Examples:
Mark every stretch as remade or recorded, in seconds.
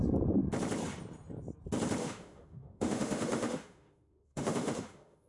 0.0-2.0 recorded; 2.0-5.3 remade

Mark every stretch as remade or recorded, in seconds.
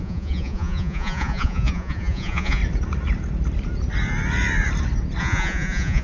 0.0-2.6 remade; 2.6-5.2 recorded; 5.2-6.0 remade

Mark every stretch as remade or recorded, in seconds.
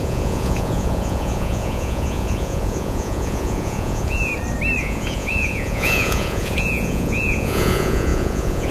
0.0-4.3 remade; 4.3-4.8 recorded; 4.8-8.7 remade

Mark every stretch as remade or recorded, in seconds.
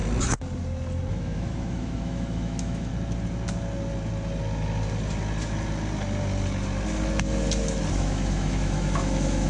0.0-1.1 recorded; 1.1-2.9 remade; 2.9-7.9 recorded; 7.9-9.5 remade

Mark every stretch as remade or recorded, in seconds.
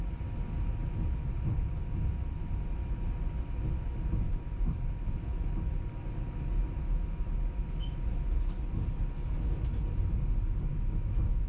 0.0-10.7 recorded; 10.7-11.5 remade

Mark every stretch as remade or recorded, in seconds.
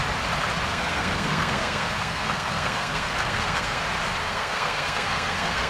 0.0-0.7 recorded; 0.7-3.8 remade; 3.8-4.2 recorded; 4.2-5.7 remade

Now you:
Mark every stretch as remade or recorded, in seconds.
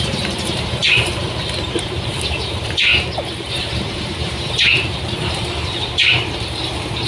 0.0-0.8 remade; 0.8-1.7 recorded; 1.7-2.9 remade; 2.9-3.5 recorded; 3.5-7.1 remade